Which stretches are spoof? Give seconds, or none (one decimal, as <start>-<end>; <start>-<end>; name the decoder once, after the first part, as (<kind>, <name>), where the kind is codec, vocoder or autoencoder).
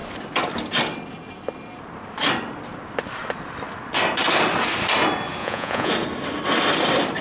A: 5.4-5.9 (vocoder, Vocos)